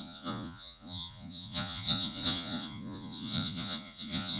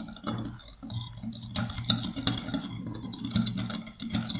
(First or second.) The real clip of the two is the second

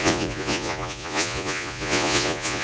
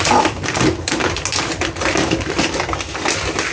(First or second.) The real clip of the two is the second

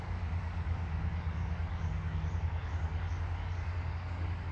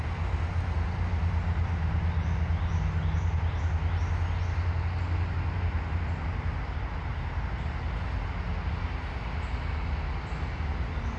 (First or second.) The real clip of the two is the second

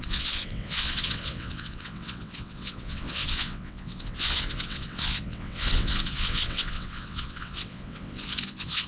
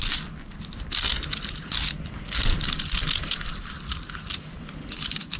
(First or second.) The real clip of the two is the second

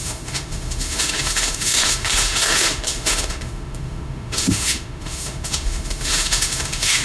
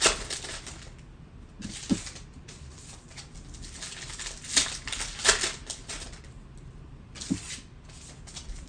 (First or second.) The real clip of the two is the second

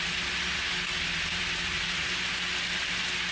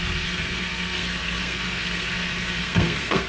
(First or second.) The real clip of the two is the first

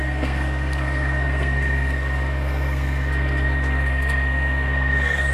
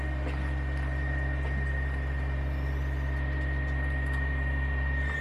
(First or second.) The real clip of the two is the second